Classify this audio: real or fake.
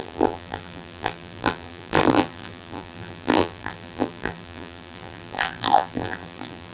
fake